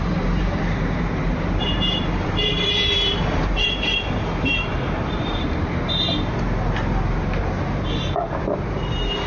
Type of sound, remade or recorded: remade